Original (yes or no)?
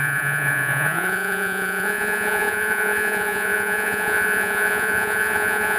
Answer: no